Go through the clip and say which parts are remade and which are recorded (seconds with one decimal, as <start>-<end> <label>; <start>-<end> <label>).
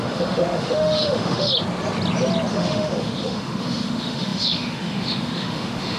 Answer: 0.0-1.5 remade; 1.5-2.5 recorded; 2.5-6.0 remade